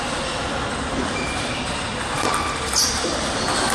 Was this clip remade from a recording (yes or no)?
no